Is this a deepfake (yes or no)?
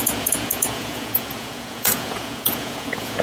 yes